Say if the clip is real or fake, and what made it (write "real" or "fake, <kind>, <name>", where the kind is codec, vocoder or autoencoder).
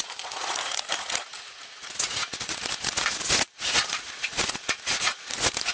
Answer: fake, vocoder, Vocos